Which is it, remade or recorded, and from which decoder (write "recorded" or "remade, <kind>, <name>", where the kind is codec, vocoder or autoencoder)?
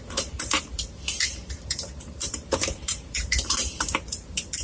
remade, vocoder, BigVGAN v2